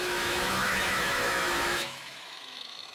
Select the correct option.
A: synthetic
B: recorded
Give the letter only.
A